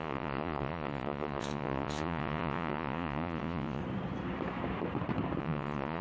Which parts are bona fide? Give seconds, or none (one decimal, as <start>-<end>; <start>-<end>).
3.8-5.4